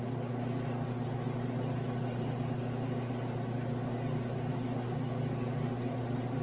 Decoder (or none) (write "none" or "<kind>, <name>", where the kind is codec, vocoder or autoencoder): none